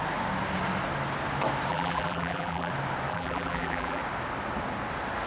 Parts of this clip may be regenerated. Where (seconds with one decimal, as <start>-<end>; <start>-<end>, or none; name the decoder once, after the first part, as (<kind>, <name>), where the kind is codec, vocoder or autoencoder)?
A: 1.7-2.7 (vocoder, BigVGAN v2); 3.1-4.0